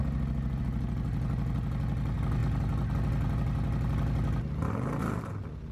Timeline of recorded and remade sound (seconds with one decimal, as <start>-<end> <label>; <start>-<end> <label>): 0.0-5.7 recorded